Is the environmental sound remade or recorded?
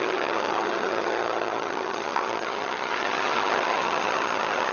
remade